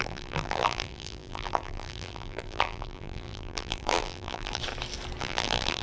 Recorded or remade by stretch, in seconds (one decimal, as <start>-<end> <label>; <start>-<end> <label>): 0.0-4.6 remade; 4.6-5.2 recorded; 5.2-5.8 remade